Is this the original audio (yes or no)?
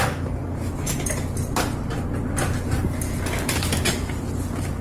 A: yes